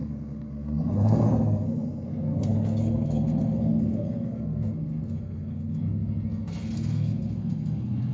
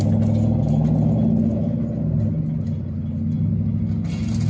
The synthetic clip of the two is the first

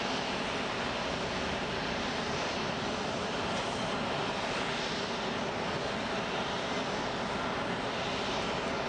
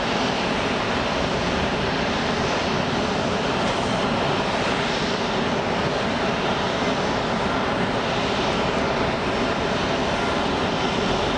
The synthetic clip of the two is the second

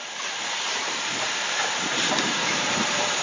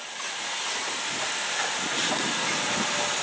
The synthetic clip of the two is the first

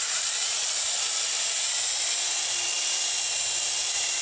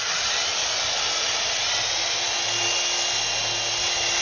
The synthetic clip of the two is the first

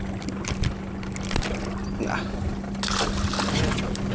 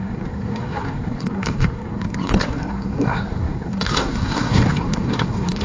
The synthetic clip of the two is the second